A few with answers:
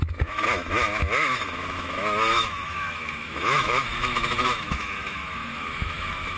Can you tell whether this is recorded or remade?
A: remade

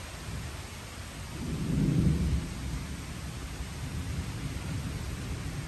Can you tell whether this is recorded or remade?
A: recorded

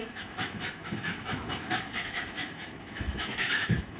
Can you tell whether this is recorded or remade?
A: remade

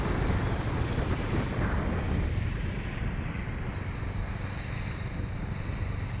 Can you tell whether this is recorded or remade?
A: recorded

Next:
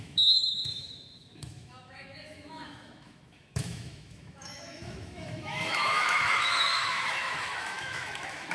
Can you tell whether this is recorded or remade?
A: remade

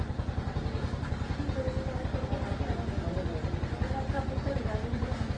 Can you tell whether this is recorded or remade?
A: recorded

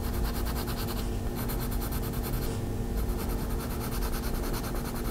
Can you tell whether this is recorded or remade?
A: recorded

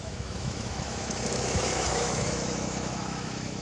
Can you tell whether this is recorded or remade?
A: remade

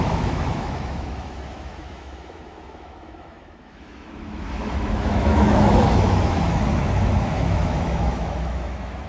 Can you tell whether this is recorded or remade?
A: remade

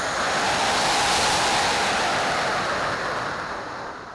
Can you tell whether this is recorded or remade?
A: recorded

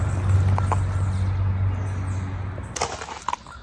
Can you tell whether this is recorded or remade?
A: recorded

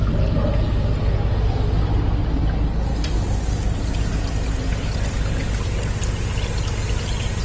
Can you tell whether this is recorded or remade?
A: recorded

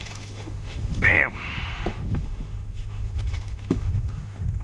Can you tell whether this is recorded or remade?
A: remade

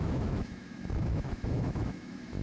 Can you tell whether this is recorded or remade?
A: remade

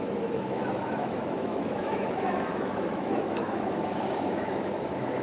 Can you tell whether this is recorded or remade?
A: remade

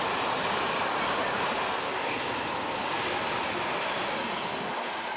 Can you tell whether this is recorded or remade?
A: recorded